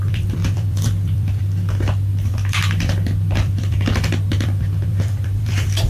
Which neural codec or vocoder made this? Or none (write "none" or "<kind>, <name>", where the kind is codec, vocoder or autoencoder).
vocoder, BigVGAN v2